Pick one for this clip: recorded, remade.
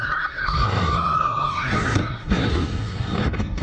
remade